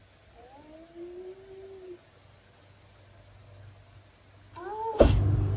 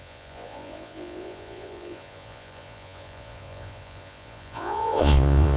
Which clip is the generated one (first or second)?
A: second